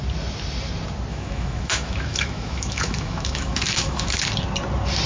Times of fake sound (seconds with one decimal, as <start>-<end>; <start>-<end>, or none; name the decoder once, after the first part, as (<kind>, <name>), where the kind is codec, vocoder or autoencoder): 1.1-4.2 (autoencoder, DAC-VAE)